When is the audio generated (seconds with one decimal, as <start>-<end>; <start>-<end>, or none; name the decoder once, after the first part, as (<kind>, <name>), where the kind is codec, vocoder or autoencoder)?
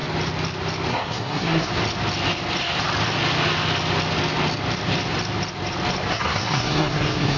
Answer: 0.9-1.7 (codec, SNAC); 6.1-7.4